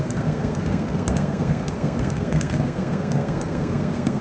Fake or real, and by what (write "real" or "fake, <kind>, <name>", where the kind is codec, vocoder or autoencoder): fake, codec, SNAC